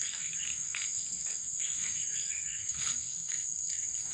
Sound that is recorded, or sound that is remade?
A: remade